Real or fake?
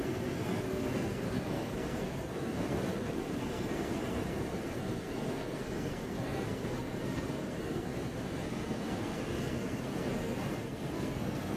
fake